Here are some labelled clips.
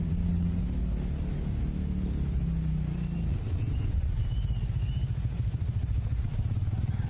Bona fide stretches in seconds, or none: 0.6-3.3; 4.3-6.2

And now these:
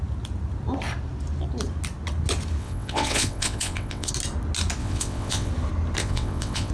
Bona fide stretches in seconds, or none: 0.0-2.6; 4.1-4.8; 5.5-6.0

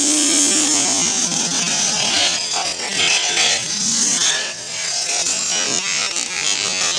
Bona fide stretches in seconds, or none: 0.0-1.2; 5.4-7.0

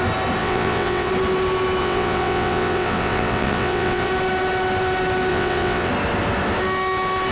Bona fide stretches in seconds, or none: 0.0-0.4; 1.1-1.8; 4.1-5.3; 5.9-7.3

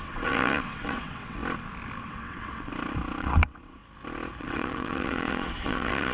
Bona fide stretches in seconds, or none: 1.4-2.0; 2.7-3.2; 3.8-4.4